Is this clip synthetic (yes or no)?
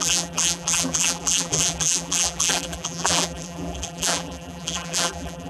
yes